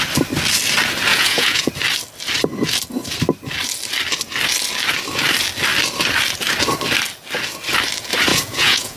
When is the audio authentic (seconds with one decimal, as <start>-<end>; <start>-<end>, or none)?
0.0-1.1; 1.7-8.3